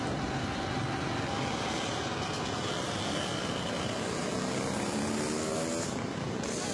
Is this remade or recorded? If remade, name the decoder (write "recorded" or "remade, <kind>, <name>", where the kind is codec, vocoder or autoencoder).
recorded